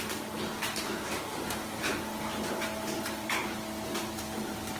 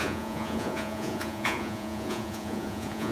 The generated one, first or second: second